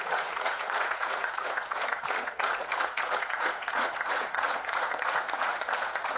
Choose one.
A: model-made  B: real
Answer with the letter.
A